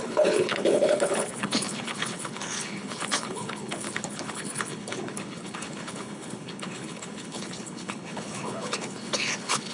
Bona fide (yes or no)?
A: no